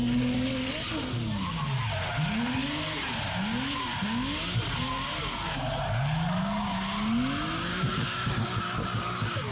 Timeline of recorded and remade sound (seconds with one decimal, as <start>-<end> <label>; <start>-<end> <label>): 0.0-7.7 recorded; 7.7-8.6 remade; 8.6-9.5 recorded